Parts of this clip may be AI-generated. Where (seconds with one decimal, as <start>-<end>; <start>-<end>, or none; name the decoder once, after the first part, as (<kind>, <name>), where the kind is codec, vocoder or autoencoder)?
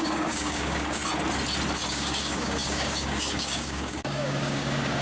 0.0-1.0 (codec, DAC); 1.9-5.0